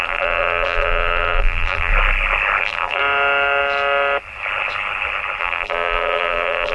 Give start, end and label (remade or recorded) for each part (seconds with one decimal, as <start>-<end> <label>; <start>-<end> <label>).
0.0-1.9 remade; 1.9-2.6 recorded; 2.6-3.0 remade; 3.0-5.4 recorded; 5.4-6.7 remade